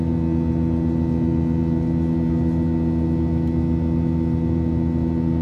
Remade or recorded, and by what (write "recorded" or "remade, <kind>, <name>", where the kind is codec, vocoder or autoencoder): recorded